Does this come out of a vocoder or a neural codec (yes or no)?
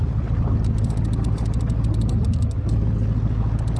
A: no